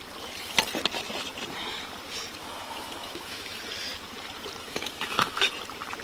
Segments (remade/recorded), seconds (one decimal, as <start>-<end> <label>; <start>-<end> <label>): 0.0-2.4 recorded; 2.4-3.6 remade; 3.6-4.6 recorded; 4.6-5.5 remade; 5.5-6.0 recorded

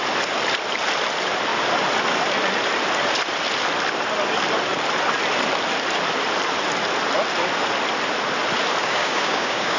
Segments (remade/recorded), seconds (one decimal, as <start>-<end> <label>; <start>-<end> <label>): 0.0-8.8 recorded; 8.8-9.8 remade

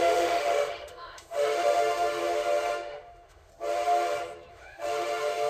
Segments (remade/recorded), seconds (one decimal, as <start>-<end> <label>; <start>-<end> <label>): 0.0-2.2 remade; 2.2-2.7 recorded; 2.7-3.5 remade; 3.5-4.5 recorded; 4.5-5.5 remade

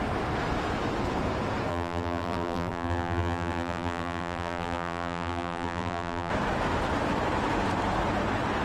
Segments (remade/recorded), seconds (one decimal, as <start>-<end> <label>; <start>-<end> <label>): 0.0-1.7 recorded; 1.7-6.3 remade; 6.3-8.6 recorded